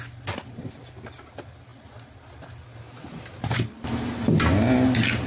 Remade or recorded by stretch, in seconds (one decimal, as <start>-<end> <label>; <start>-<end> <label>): 0.0-5.3 recorded